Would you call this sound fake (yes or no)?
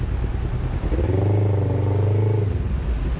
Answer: no